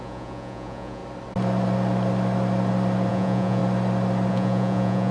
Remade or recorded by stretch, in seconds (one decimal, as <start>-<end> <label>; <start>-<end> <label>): 0.0-1.0 remade; 1.0-3.1 recorded; 3.1-3.6 remade; 3.6-4.3 recorded; 4.3-5.1 remade